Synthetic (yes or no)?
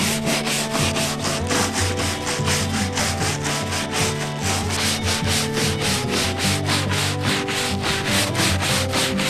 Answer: no